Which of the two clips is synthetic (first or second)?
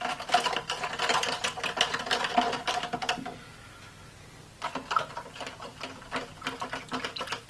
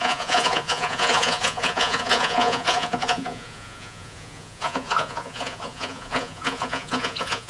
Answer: second